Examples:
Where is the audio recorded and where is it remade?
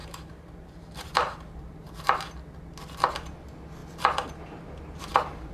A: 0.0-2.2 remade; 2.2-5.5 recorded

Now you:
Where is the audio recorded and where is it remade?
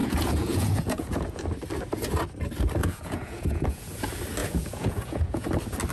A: 0.0-1.4 remade; 1.4-2.8 recorded; 2.8-4.0 remade; 4.0-4.4 recorded; 4.4-5.5 remade; 5.5-5.9 recorded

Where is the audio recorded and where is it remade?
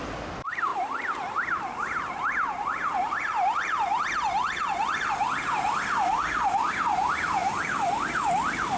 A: 0.0-0.7 recorded; 0.7-5.1 remade; 5.1-7.4 recorded; 7.4-8.3 remade; 8.3-8.8 recorded